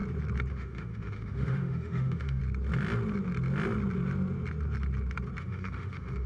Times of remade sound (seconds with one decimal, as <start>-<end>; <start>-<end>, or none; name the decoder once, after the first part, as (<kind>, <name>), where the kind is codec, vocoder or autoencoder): 0.5-2.4 (autoencoder, DAC-VAE); 5.4-6.3